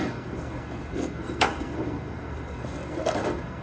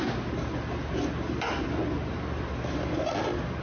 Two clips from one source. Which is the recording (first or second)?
second